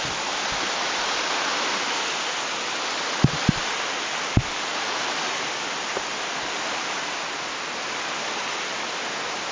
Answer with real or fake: real